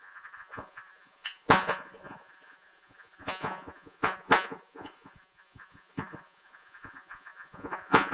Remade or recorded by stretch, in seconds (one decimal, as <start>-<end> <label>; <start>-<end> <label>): 0.0-8.1 remade